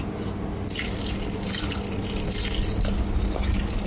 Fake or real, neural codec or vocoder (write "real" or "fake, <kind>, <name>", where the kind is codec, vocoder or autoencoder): real